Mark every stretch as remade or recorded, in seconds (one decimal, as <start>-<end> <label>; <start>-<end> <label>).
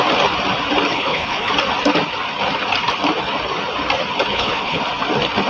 0.0-0.9 recorded; 0.9-1.5 remade; 1.5-4.3 recorded; 4.3-4.8 remade; 4.8-5.5 recorded